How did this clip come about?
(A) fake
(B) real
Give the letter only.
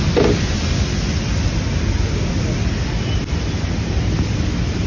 B